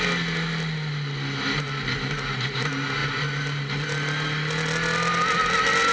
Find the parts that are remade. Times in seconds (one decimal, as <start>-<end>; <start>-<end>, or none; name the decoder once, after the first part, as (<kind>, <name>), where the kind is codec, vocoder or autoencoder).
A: none